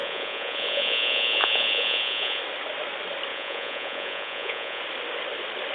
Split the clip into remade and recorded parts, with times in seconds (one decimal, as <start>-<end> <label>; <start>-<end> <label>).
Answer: 0.0-2.4 remade; 2.4-3.3 recorded; 3.3-4.8 remade; 4.8-5.7 recorded